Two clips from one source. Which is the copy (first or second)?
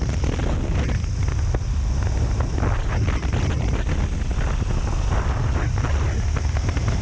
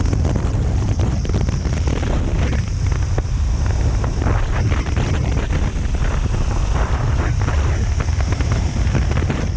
second